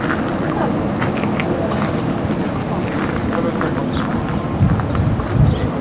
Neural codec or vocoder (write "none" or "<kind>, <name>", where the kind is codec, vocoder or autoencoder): none